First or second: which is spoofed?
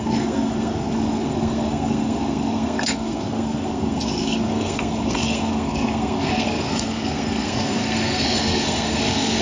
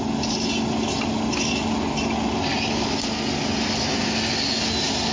first